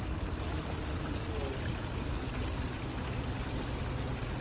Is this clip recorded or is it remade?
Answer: recorded